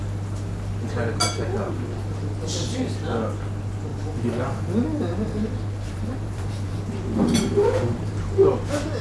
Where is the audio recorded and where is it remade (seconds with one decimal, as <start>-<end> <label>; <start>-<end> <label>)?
0.0-3.9 recorded; 3.9-6.8 remade; 6.8-7.2 recorded; 7.2-8.4 remade; 8.4-9.0 recorded

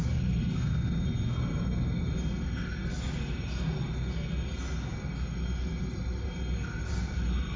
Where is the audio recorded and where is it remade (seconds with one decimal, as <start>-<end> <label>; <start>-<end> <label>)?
0.0-7.6 recorded